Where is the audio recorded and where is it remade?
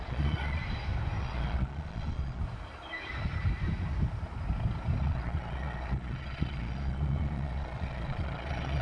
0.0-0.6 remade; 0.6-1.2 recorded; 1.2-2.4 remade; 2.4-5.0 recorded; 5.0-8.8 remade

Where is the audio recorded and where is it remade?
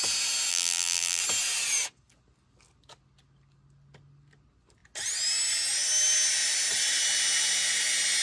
0.0-0.5 recorded; 0.5-1.2 remade; 1.2-8.2 recorded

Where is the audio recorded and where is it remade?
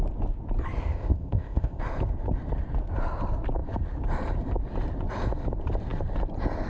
0.0-0.8 recorded; 0.8-1.8 remade; 1.8-6.7 recorded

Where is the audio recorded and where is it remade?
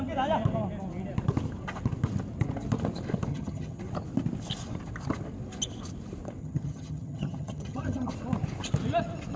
0.0-3.3 recorded; 3.3-3.8 remade; 3.8-6.4 recorded; 6.4-8.1 remade; 8.1-9.4 recorded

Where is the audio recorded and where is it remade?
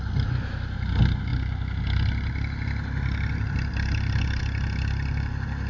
0.0-5.7 recorded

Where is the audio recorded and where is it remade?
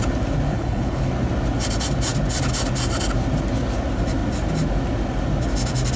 0.0-0.5 recorded; 0.5-1.1 remade; 1.1-6.0 recorded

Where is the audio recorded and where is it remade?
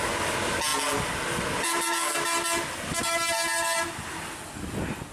0.0-5.1 recorded